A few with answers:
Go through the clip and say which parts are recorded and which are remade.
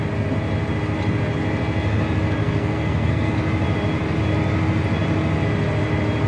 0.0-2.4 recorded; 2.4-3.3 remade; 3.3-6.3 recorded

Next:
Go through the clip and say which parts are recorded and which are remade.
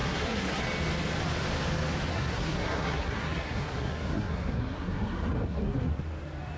0.0-0.6 remade; 0.6-2.1 recorded; 2.1-6.0 remade; 6.0-6.6 recorded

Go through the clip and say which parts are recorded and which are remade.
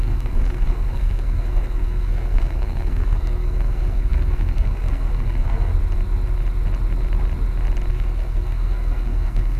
0.0-5.7 remade; 5.7-7.9 recorded; 7.9-9.6 remade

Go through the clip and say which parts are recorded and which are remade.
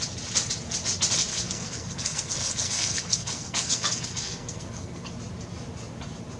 0.0-1.3 recorded; 1.3-5.1 remade; 5.1-6.4 recorded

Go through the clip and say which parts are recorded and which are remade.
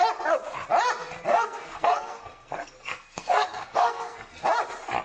0.0-1.3 recorded; 1.3-4.3 remade; 4.3-5.0 recorded